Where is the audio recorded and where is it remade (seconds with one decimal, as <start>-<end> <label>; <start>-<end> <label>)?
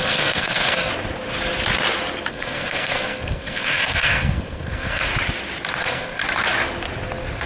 0.0-0.9 remade; 0.9-2.3 recorded; 2.3-5.1 remade; 5.1-5.8 recorded; 5.8-6.2 remade; 6.2-7.5 recorded